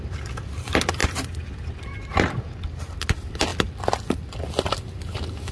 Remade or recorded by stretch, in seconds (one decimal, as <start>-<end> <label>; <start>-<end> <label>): 0.0-5.5 recorded